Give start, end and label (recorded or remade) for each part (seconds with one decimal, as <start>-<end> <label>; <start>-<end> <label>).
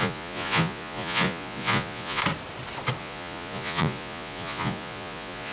0.0-2.2 remade; 2.2-3.0 recorded; 3.0-5.5 remade